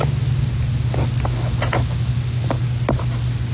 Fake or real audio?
real